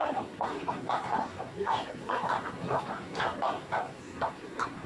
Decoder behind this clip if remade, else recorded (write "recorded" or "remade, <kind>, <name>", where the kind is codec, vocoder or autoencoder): remade, codec, SNAC